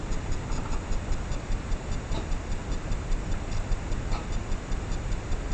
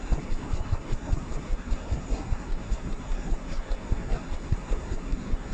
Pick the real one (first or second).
first